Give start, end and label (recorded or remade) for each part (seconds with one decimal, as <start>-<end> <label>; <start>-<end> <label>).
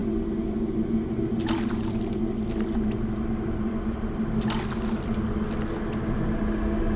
0.0-7.0 recorded